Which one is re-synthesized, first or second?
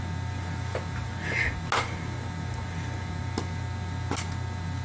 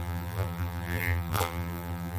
second